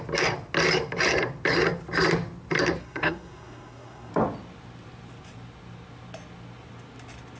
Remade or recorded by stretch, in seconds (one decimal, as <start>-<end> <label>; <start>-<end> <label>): 0.0-2.8 recorded; 2.8-4.1 remade; 4.1-7.4 recorded